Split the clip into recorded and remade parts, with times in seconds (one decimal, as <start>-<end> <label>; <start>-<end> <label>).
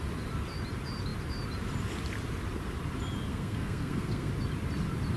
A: 0.0-3.3 recorded; 3.3-4.3 remade; 4.3-5.2 recorded